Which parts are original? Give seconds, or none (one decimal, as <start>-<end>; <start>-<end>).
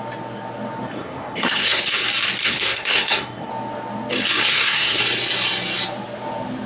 0.0-0.9; 1.8-2.4; 3.5-4.4; 5.0-6.7